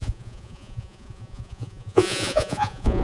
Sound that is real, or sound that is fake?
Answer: fake